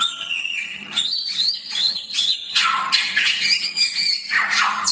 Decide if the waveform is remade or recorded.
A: remade